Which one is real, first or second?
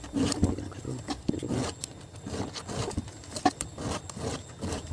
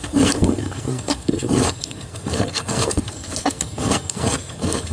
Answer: first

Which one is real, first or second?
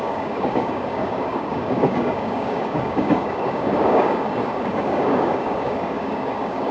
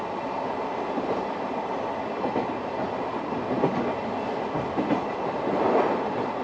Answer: second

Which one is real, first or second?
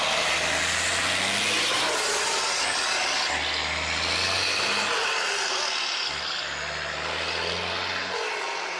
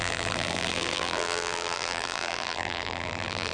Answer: first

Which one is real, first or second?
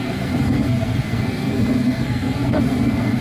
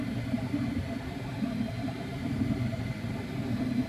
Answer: second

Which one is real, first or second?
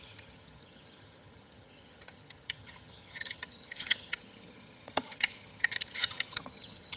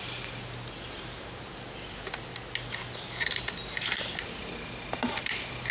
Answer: second